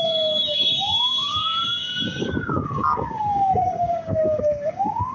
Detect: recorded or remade remade